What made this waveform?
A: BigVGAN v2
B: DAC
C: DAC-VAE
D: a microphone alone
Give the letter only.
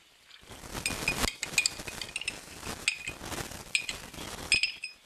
D